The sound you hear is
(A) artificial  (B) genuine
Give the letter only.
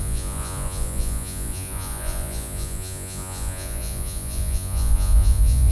A